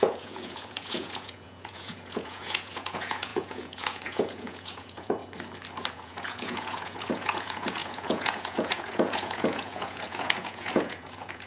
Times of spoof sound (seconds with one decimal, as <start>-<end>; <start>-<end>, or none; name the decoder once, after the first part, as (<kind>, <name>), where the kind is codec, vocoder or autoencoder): 0.0-5.2 (vocoder, Vocos); 5.9-11.5